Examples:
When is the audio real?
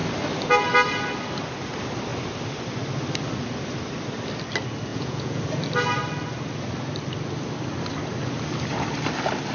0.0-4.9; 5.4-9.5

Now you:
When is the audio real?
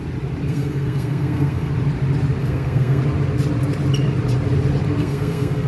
0.0-0.5; 1.7-2.4; 3.0-5.0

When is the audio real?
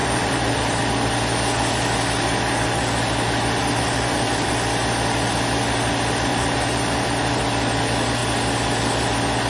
0.8-3.6; 4.5-6.3; 7.4-9.5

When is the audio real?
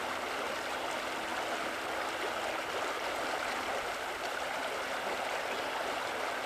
0.0-6.5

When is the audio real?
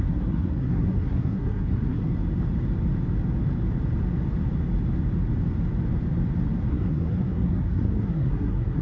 2.1-6.7